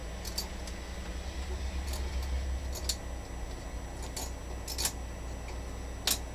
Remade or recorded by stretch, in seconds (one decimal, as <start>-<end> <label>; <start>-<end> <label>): 0.0-6.3 recorded